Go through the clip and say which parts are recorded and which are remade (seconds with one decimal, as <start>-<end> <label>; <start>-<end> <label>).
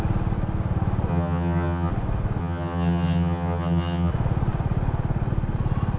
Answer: 0.0-1.1 recorded; 1.1-1.9 remade; 1.9-2.4 recorded; 2.4-4.1 remade; 4.1-6.0 recorded